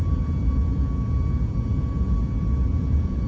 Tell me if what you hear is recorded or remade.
remade